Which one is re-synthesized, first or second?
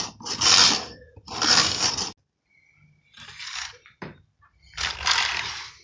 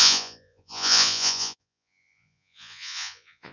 second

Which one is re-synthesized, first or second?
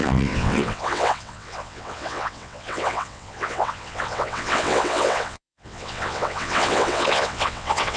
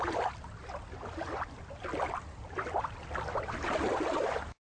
first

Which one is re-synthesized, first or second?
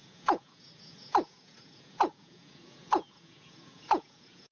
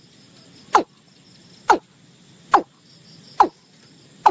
first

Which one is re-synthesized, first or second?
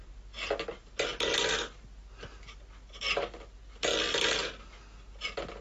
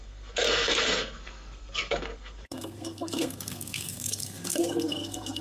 second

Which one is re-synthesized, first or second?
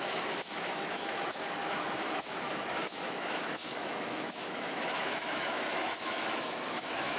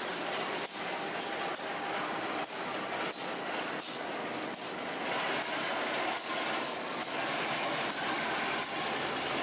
first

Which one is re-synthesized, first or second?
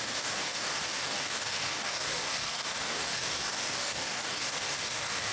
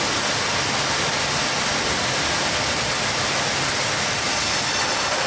first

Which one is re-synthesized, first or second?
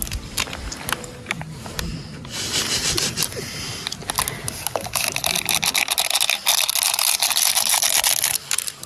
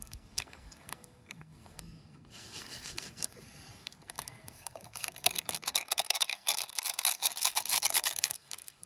second